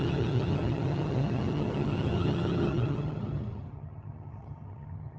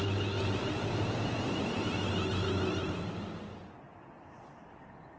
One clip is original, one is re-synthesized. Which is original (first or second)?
second